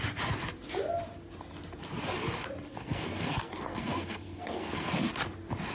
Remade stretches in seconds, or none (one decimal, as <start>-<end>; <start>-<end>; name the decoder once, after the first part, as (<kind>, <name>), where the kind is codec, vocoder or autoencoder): 2.7-4.9 (codec, SNAC)